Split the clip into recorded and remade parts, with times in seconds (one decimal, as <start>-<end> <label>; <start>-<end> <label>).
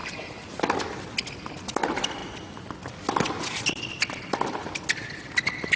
0.0-5.8 recorded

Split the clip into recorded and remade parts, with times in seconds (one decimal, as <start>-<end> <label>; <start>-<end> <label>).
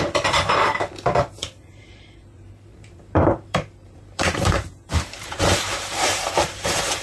0.0-7.0 remade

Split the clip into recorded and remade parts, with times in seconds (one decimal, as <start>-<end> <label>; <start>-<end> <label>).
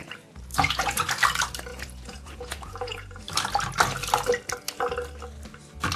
0.0-0.5 recorded; 0.5-1.0 remade; 1.0-1.7 recorded; 1.7-3.2 remade; 3.2-6.0 recorded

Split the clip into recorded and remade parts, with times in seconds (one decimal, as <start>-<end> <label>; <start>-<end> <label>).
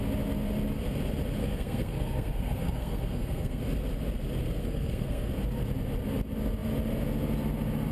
0.0-1.4 recorded; 1.4-3.6 remade; 3.6-4.6 recorded; 4.6-5.3 remade; 5.3-7.9 recorded